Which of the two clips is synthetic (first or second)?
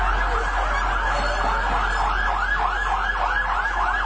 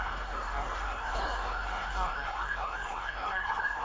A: second